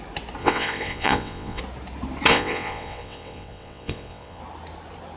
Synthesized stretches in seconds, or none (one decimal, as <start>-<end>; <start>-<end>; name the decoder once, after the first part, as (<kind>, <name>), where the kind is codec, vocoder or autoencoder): 0.4-1.6 (vocoder, WaveNeXt); 2.3-4.4